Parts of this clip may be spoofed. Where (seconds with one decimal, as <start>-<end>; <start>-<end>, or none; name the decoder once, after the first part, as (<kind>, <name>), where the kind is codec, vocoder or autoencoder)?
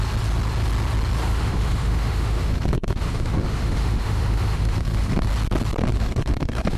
1.2-5.3 (autoencoder, DAC-VAE); 5.8-6.8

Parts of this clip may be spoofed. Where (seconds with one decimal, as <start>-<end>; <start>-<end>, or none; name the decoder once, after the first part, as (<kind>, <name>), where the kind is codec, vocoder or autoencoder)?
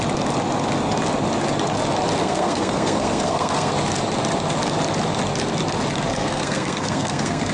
2.2-3.7 (codec, SNAC); 6.1-7.5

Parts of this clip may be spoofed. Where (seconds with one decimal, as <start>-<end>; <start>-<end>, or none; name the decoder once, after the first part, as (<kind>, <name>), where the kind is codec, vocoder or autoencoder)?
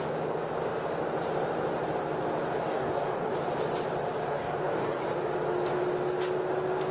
2.7-3.3 (codec, DAC); 4.2-5.0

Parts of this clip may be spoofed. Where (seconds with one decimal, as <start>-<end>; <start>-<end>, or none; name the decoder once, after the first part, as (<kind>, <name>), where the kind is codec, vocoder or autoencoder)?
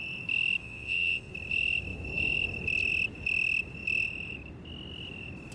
0.6-1.3 (vocoder, WaveNeXt)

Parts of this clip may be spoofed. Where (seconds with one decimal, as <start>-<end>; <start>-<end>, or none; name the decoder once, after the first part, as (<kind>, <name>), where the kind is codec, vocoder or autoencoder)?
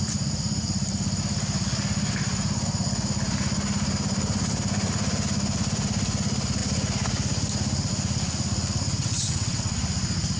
9.0-9.8 (vocoder, WaveNeXt)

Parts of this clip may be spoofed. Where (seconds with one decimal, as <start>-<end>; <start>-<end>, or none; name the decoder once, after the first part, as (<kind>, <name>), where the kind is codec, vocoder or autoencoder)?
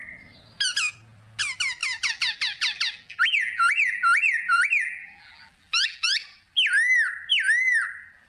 1.8-6.2 (vocoder, BigVGAN v2)